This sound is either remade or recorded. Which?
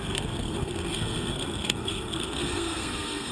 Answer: remade